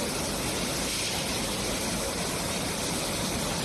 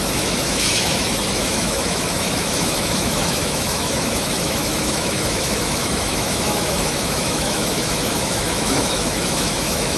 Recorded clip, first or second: first